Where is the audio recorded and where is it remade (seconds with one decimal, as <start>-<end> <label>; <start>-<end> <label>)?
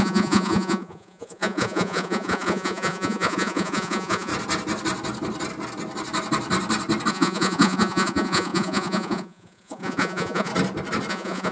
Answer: 0.0-4.3 remade; 4.3-7.1 recorded; 7.1-10.5 remade; 10.5-11.1 recorded; 11.1-11.5 remade